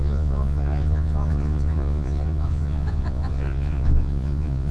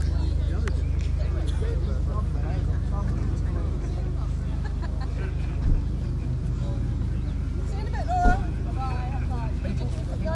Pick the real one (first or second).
second